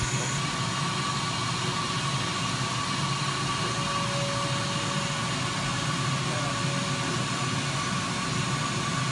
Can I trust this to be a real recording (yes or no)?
yes